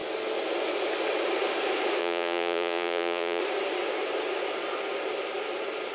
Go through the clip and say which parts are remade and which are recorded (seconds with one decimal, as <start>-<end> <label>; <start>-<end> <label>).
0.0-2.0 recorded; 2.0-3.4 remade; 3.4-5.9 recorded